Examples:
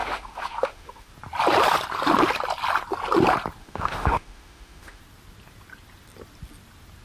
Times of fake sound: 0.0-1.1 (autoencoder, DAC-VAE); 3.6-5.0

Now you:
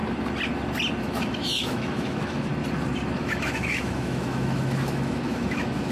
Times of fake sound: 1.0-2.5 (autoencoder, DAC-VAE); 3.2-5.9

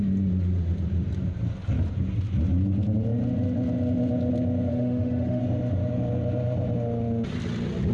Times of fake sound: 4.7-5.4 (autoencoder, DAC-VAE)

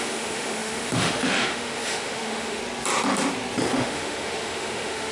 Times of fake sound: 0.0-2.6 (autoencoder, DAC-VAE); 3.7-5.1

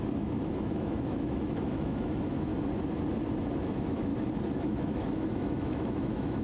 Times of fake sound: 0.0-2.5 (autoencoder, DAC-VAE); 3.6-4.1; 4.6-6.4